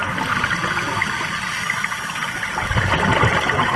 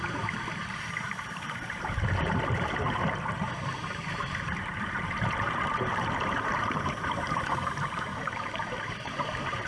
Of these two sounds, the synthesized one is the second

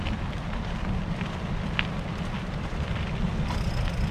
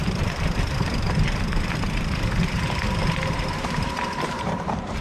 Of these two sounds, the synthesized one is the second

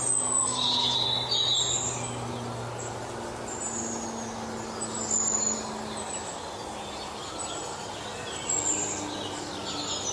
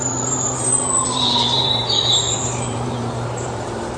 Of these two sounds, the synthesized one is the second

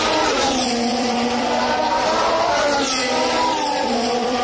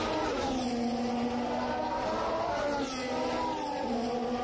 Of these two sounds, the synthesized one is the first